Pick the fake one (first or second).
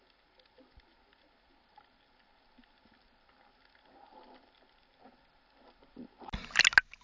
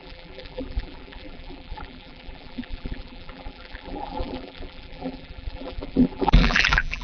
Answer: second